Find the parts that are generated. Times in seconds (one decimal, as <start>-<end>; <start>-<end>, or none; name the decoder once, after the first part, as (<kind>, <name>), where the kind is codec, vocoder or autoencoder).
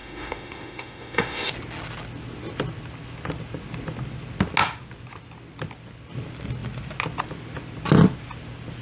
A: 0.0-1.5 (autoencoder, DAC-VAE)